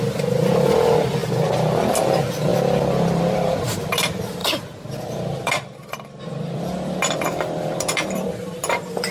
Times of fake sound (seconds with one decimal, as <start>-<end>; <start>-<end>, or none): 0.0-2.5; 3.2-9.1